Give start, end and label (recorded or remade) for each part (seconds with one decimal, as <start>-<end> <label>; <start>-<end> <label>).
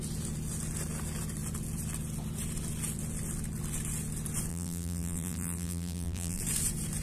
0.0-4.5 recorded; 4.5-6.4 remade; 6.4-7.0 recorded